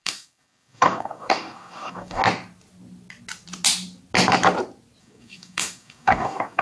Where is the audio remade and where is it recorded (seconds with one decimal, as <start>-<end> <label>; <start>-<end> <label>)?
0.0-2.2 remade; 2.2-5.0 recorded; 5.0-6.6 remade